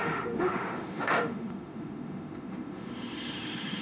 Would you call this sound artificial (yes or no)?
yes